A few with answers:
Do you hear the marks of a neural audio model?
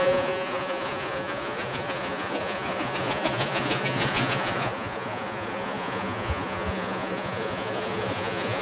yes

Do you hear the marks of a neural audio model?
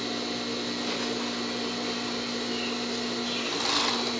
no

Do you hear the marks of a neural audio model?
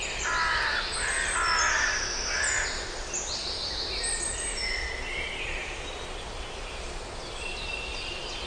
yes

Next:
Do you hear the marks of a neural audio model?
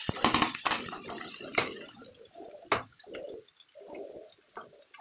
no